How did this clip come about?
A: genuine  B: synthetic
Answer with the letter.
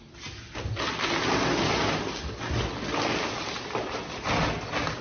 A